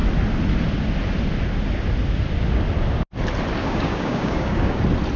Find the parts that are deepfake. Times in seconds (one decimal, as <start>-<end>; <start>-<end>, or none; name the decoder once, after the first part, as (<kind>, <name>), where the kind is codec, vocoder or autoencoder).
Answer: 3.6-4.8 (codec, DAC)